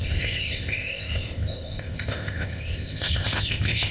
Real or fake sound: fake